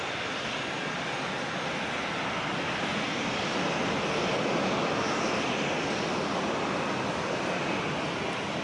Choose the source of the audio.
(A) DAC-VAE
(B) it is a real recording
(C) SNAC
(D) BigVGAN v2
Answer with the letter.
B